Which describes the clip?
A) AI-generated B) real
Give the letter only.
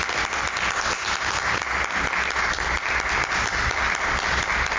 B